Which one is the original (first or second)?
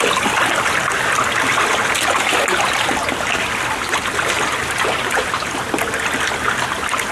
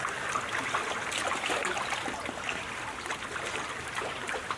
first